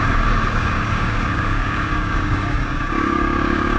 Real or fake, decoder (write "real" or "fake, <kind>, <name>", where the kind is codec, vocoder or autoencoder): fake, codec, DAC